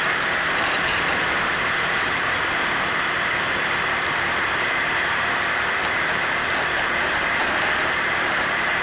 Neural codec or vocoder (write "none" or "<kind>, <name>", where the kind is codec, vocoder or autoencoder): vocoder, BigVGAN v2